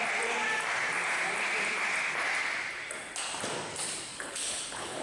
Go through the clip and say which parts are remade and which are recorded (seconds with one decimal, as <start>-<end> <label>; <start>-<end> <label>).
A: 0.0-4.1 recorded; 4.1-5.0 remade